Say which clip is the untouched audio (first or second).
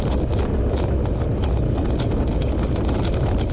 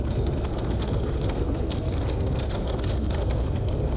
first